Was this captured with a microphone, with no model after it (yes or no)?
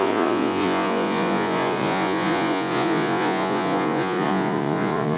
no